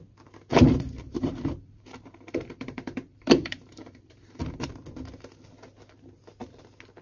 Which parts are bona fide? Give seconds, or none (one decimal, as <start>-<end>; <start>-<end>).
0.0-0.5; 4.7-7.0